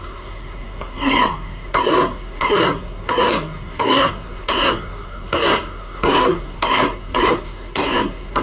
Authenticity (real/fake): fake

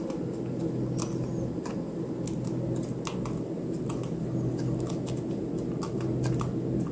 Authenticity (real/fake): real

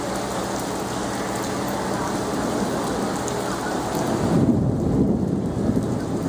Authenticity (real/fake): real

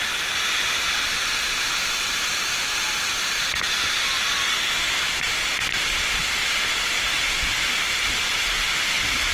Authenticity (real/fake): real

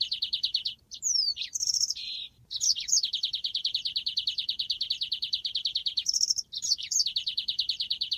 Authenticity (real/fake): fake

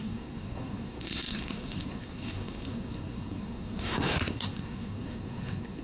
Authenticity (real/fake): fake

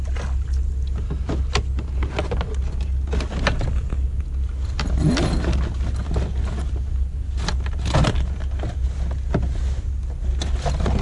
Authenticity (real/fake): real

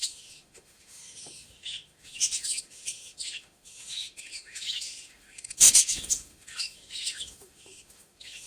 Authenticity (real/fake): fake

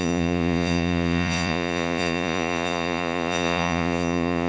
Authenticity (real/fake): fake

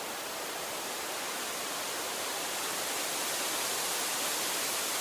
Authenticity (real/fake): real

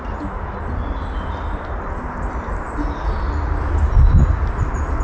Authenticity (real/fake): real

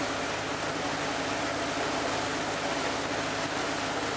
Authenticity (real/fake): real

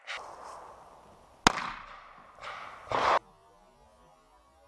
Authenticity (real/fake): real